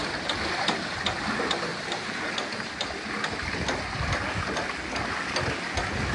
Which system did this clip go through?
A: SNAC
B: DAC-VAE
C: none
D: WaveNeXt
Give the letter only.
C